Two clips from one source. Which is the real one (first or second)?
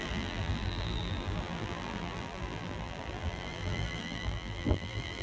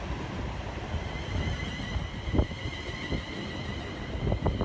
second